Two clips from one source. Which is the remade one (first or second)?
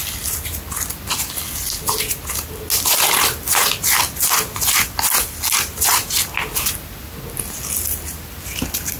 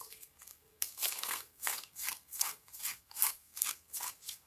second